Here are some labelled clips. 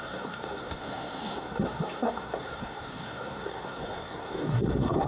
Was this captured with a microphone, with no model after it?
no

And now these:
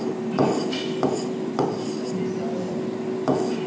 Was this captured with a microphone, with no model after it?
no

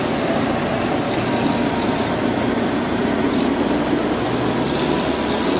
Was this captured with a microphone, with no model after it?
yes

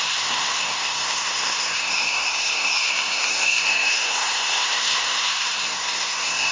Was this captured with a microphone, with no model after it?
no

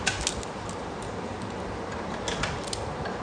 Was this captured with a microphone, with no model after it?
yes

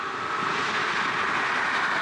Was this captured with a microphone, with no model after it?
yes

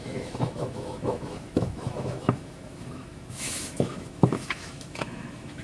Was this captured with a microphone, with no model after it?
no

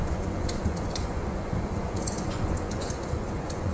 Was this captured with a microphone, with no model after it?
no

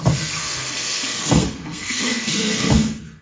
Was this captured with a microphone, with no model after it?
no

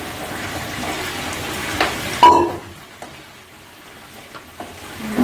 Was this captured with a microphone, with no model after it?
yes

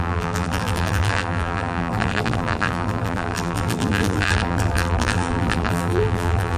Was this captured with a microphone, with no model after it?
no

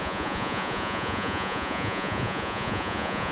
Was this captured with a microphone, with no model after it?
no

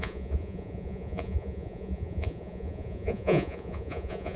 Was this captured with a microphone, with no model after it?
no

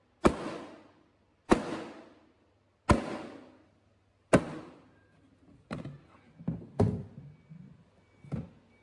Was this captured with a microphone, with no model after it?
yes